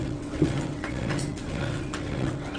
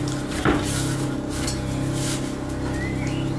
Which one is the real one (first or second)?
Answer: second